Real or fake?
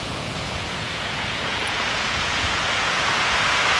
fake